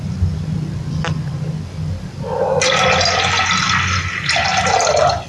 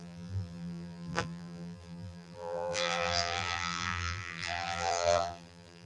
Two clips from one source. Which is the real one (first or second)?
first